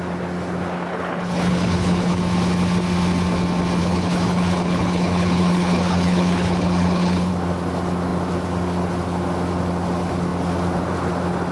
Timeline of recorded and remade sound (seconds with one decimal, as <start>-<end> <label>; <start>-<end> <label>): 0.0-0.9 recorded; 0.9-2.2 remade; 2.2-3.8 recorded; 3.8-7.3 remade; 7.3-11.5 recorded